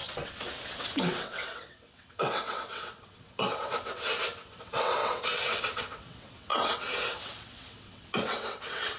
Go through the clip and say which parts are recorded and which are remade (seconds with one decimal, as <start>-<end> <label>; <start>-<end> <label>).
0.0-9.0 remade